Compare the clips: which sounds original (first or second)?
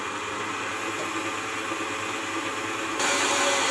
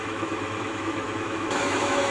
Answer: first